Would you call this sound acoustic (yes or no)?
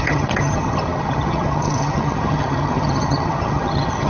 no